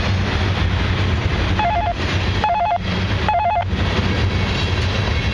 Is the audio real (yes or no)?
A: yes